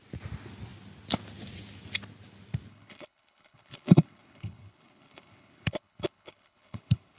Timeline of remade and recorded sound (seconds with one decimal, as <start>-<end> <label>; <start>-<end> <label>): 0.0-2.7 recorded; 2.7-7.2 remade